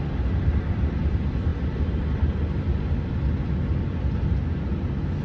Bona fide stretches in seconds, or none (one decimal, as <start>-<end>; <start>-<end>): 0.0-5.2